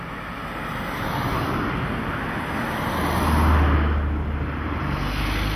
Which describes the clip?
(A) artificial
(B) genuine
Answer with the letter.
B